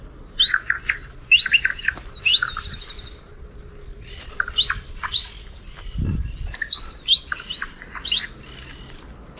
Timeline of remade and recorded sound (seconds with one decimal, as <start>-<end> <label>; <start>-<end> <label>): 0.0-9.4 recorded